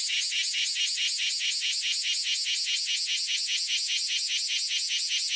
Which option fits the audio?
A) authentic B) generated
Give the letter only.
A